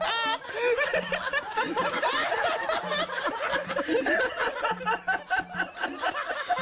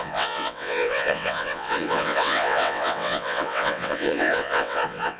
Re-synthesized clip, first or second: second